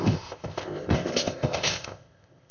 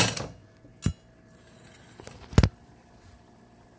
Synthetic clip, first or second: first